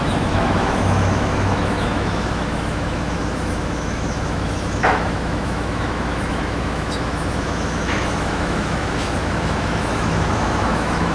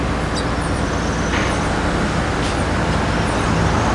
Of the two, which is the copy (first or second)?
first